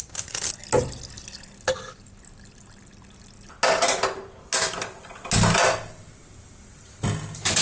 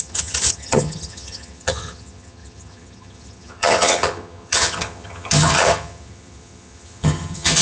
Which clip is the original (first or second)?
first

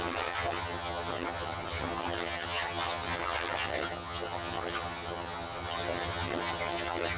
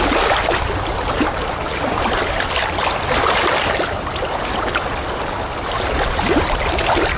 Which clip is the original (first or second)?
second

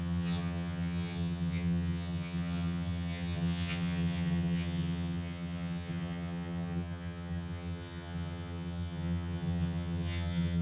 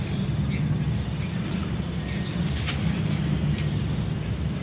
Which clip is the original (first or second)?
second